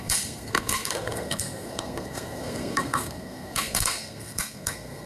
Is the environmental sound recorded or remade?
remade